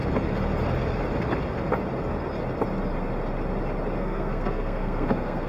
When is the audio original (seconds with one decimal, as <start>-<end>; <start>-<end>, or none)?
0.0-4.0